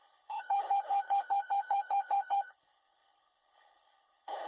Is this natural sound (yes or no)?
no